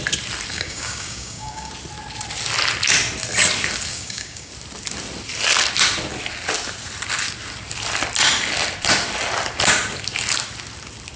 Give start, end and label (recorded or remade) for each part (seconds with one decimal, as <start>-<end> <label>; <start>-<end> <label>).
0.0-0.5 recorded; 0.5-1.7 remade; 1.7-3.9 recorded; 3.9-4.5 remade; 4.5-11.2 recorded